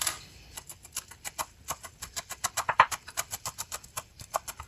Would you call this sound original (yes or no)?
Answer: yes